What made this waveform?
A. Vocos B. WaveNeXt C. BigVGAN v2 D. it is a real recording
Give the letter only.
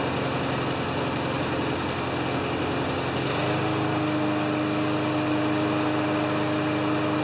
D